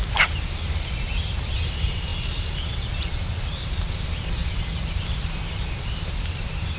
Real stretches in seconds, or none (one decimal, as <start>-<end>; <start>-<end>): none